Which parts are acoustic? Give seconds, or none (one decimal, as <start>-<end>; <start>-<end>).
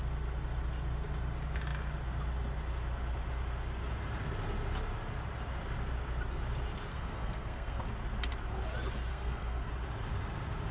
0.0-6.9; 7.8-9.1; 9.7-10.7